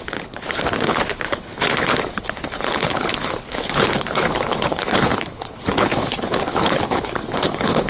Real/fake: fake